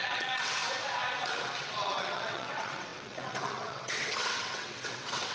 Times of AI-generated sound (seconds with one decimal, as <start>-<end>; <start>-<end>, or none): 0.0-0.6; 1.6-5.3